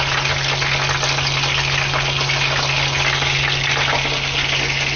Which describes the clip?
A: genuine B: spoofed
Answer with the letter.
A